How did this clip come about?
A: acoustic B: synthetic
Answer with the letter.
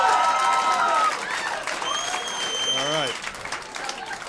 A